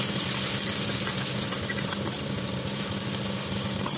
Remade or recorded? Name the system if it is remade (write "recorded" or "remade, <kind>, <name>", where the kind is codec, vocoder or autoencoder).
recorded